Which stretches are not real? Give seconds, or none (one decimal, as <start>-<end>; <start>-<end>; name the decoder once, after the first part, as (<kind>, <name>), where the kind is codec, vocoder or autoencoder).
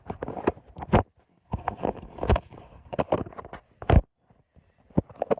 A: 1.3-3.0 (codec, SNAC)